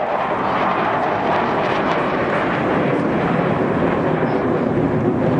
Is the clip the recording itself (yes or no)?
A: no